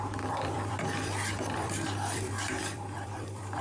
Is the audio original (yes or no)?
no